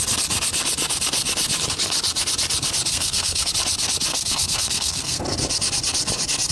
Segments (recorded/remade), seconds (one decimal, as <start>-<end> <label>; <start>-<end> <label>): 0.0-2.9 recorded; 2.9-3.5 remade; 3.5-4.1 recorded; 4.1-5.2 remade; 5.2-6.5 recorded